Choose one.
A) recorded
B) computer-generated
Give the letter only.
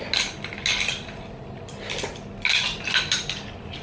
A